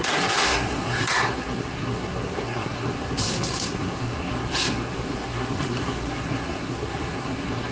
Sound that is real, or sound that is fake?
fake